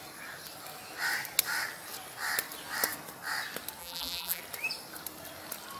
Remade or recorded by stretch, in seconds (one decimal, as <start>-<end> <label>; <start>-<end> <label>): 0.0-3.8 recorded; 3.8-4.4 remade; 4.4-5.8 recorded